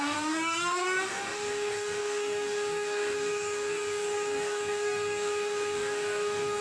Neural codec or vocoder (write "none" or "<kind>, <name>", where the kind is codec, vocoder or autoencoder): codec, DAC